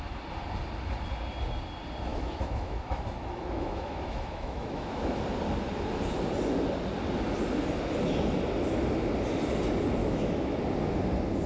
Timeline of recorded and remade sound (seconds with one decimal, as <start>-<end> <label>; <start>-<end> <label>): 0.0-2.1 recorded; 2.1-5.2 remade; 5.2-10.0 recorded; 10.0-10.6 remade; 10.6-11.5 recorded